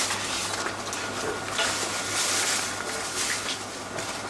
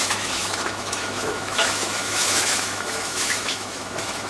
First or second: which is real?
first